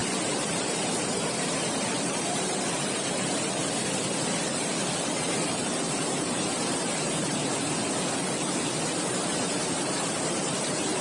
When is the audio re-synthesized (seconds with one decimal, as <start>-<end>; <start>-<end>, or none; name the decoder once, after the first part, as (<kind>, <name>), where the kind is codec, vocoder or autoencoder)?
0.0-3.6 (vocoder, BigVGAN v2); 5.1-7.4; 9.7-11.0